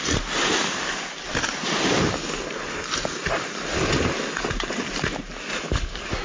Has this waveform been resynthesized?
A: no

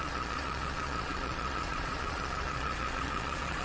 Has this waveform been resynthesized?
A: yes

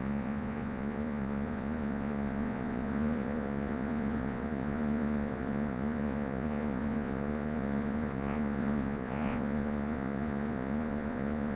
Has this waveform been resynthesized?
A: yes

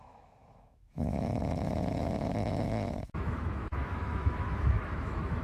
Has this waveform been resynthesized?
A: yes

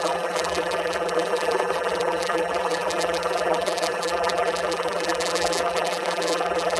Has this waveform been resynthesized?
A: yes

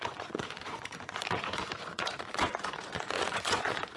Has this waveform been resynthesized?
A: yes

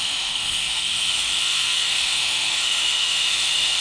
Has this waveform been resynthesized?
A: yes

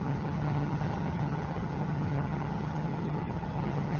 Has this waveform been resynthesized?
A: yes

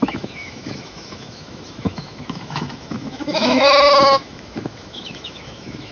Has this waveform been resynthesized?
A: yes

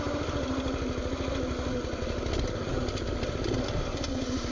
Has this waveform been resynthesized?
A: no